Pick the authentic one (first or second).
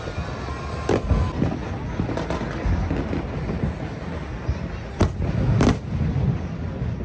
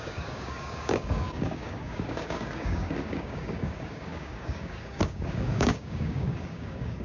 first